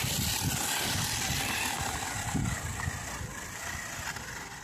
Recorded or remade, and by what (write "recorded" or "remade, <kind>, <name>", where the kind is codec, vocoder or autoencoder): recorded